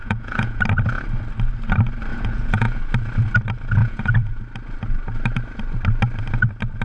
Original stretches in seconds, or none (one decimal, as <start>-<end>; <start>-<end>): 0.6-2.1; 2.8-3.8; 4.4-6.8